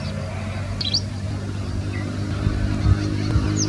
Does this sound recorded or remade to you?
recorded